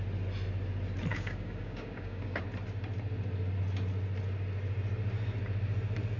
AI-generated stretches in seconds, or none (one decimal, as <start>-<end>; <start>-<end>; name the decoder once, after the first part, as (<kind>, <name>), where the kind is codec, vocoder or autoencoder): 1.1-2.4 (codec, DAC)